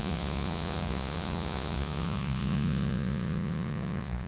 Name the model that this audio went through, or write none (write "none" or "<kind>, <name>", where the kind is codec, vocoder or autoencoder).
vocoder, Vocos